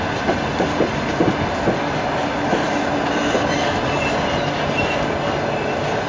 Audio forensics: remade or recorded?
recorded